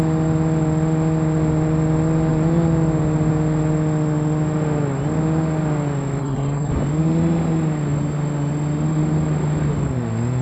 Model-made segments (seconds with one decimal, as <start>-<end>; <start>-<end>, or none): 6.2-6.7